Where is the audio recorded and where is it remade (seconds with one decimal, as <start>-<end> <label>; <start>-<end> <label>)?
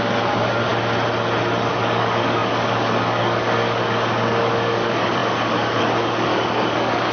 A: 0.0-0.7 remade; 0.7-1.7 recorded; 1.7-7.1 remade